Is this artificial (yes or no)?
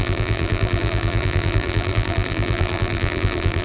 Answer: yes